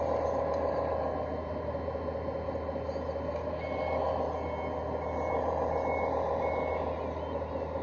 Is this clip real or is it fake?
real